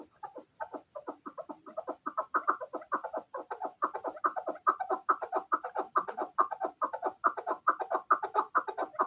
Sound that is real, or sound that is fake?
real